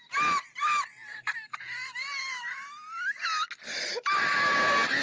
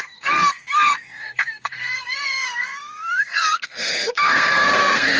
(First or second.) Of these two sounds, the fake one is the second